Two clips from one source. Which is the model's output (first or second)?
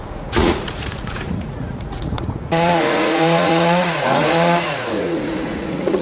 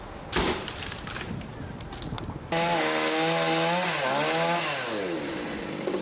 first